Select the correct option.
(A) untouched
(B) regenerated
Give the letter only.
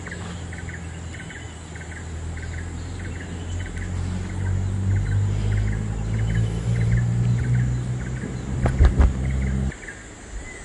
A